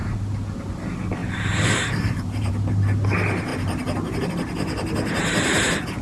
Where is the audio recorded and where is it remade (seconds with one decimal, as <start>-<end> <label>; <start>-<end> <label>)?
0.0-1.2 recorded; 1.2-2.5 remade; 2.5-3.5 recorded; 3.5-4.3 remade; 4.3-6.0 recorded